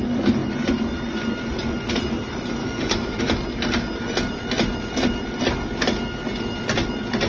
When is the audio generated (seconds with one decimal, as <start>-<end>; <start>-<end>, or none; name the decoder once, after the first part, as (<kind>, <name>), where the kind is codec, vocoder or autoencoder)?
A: 2.6-3.2 (autoencoder, DAC-VAE)